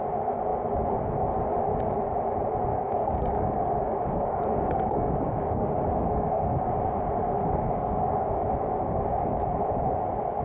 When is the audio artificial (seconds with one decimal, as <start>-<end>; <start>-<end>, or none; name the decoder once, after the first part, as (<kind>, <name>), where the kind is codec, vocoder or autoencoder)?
2.7-6.7 (codec, DAC); 7.4-9.4